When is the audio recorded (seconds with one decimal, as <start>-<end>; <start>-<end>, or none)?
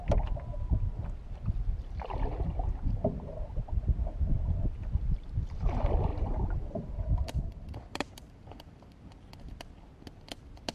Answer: 0.0-6.1; 8.9-10.7